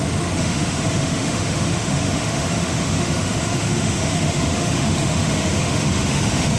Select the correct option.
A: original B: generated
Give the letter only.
B